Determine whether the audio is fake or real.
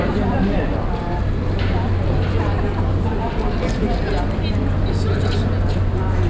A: real